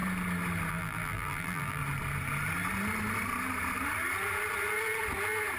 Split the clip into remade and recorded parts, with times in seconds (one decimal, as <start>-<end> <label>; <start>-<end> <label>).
0.0-0.7 recorded; 0.7-1.8 remade; 1.8-5.6 recorded